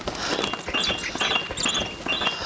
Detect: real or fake real